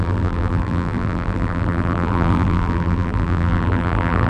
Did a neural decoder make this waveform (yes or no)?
yes